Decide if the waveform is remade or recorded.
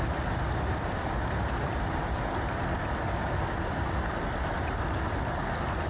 recorded